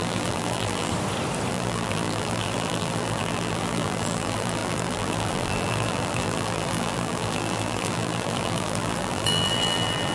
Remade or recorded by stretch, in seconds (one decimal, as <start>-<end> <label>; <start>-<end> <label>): 0.0-0.9 remade; 0.9-1.5 recorded; 1.5-10.1 remade